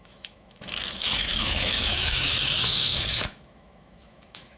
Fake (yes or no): yes